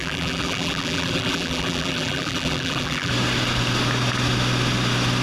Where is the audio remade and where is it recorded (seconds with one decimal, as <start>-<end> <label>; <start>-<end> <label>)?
0.0-3.1 remade; 3.1-5.2 recorded